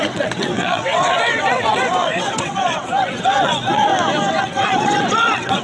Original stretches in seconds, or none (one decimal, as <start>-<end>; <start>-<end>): 3.9-4.4